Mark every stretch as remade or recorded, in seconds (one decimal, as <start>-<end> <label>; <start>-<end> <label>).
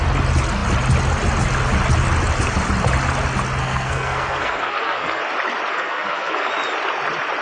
0.0-3.6 recorded; 3.6-5.2 remade; 5.2-5.7 recorded; 5.7-6.5 remade; 6.5-7.4 recorded